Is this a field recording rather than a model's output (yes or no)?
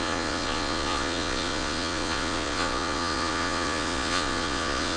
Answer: no